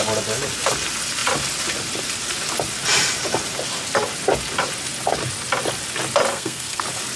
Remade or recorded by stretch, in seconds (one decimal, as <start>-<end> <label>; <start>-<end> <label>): 0.0-6.3 recorded; 6.3-6.8 remade; 6.8-7.2 recorded